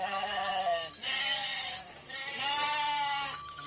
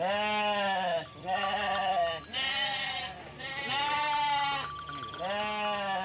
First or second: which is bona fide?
second